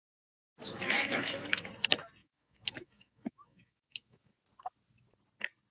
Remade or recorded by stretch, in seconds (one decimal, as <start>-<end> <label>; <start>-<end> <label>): 0.0-0.6 recorded; 0.6-1.7 remade; 1.7-2.2 recorded; 2.2-4.3 remade; 4.3-5.7 recorded